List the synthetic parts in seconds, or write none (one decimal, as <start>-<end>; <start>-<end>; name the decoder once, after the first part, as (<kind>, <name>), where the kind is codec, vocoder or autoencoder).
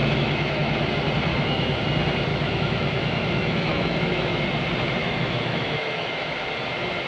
0.0-0.9 (autoencoder, DAC-VAE); 1.3-1.8; 2.3-4.4; 5.0-6.3